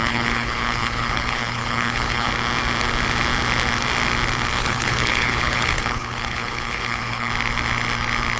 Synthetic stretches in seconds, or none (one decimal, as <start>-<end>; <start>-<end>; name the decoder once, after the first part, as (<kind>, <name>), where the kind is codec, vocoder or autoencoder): 0.0-2.3 (codec, HILCodec); 4.6-7.3